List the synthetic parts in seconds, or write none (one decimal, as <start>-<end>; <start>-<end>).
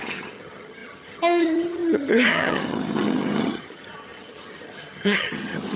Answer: 0.0-5.8